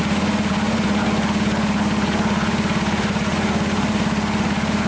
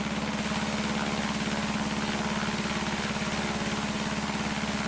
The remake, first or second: first